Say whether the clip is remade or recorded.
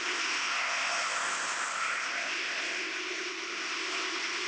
remade